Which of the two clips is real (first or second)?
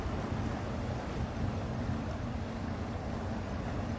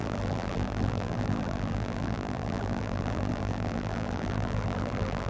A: first